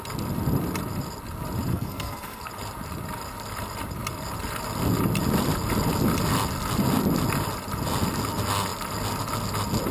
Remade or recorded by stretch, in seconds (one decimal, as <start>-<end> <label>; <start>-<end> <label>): 0.0-1.7 recorded; 1.7-2.5 remade; 2.5-9.9 recorded